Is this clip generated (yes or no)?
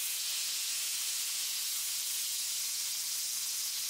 yes